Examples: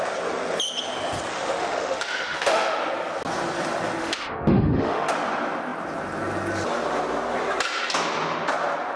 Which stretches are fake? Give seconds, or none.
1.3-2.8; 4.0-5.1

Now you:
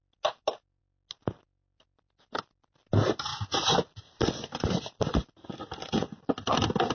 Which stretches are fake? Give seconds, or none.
none

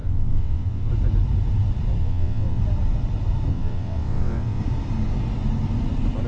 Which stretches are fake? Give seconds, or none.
0.0-0.9; 2.0-2.6; 3.5-4.6

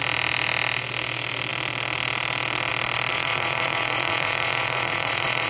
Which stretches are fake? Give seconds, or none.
3.1-5.5

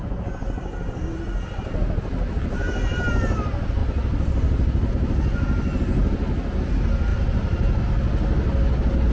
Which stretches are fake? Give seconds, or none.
7.1-7.8